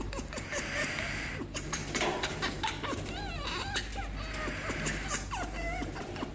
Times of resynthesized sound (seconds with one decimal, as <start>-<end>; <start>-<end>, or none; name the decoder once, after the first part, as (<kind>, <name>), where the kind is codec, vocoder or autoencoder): 0.0-3.9 (vocoder, BigVGAN v2); 4.5-6.3